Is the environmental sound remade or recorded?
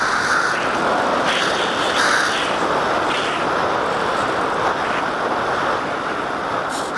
remade